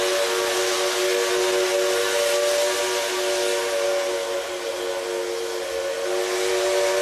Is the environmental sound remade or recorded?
recorded